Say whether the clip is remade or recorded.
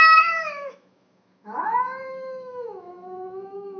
remade